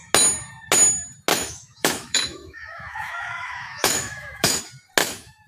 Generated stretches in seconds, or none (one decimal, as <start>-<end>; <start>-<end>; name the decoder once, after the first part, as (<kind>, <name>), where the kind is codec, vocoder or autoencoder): 1.3-4.6 (autoencoder, DAC-VAE); 5.0-5.5